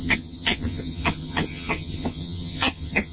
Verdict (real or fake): fake